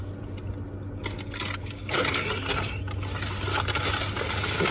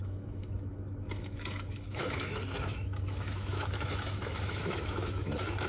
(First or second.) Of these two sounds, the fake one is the second